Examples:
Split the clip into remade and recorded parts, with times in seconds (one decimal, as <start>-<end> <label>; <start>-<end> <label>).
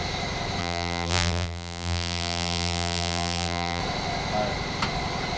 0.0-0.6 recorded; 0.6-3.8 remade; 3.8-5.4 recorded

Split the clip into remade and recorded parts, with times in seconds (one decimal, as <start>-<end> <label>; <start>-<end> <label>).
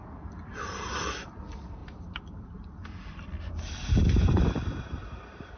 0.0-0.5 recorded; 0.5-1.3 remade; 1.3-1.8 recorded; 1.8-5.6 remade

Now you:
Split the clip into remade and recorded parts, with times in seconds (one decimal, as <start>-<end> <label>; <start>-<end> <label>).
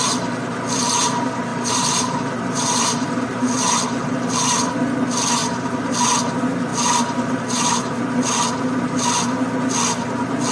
0.0-1.5 recorded; 1.5-4.7 remade; 4.7-5.4 recorded; 5.4-5.9 remade; 5.9-6.7 recorded; 6.7-8.0 remade; 8.0-10.5 recorded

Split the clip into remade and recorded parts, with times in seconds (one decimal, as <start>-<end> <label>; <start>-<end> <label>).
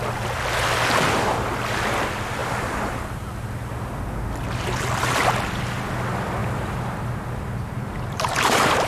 0.0-6.4 recorded; 6.4-8.3 remade; 8.3-8.9 recorded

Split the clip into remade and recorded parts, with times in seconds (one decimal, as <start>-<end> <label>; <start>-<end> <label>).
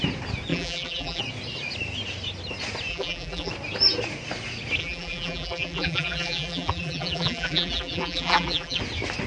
0.0-0.5 recorded; 0.5-1.2 remade; 1.2-2.9 recorded; 2.9-3.5 remade; 3.5-4.8 recorded; 4.8-8.8 remade; 8.8-9.3 recorded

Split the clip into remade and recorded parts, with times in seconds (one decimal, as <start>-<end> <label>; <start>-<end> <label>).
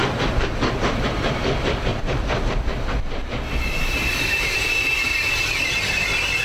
0.0-1.2 remade; 1.2-1.9 recorded; 1.9-2.4 remade; 2.4-3.8 recorded; 3.8-4.7 remade; 4.7-6.4 recorded